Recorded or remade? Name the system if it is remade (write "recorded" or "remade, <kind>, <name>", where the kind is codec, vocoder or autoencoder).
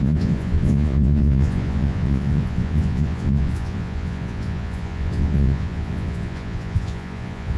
remade, vocoder, Vocos